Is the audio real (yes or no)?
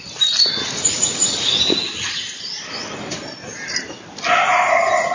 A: yes